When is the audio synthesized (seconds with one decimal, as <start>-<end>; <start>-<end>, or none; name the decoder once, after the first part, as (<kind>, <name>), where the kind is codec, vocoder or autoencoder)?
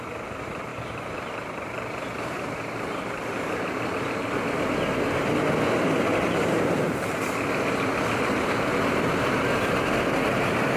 0.7-4.2 (vocoder, BigVGAN v2); 6.1-8.7; 9.5-10.8